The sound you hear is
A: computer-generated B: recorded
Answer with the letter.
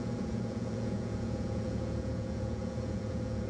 A